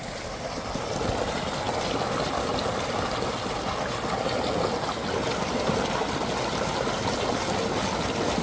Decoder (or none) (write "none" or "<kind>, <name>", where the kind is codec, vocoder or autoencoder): none